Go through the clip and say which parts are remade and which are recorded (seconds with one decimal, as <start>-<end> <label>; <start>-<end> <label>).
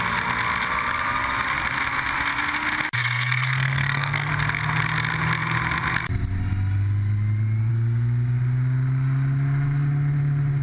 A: 0.0-3.0 recorded; 3.0-4.3 remade; 4.3-10.6 recorded